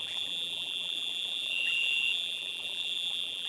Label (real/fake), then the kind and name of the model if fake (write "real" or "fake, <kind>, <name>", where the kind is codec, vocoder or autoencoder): fake, vocoder, BigVGAN v2